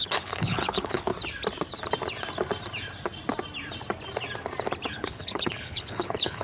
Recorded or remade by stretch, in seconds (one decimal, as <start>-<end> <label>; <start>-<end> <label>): 0.0-1.1 remade; 1.1-4.9 recorded; 4.9-6.4 remade